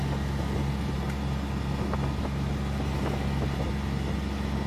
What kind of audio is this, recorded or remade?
recorded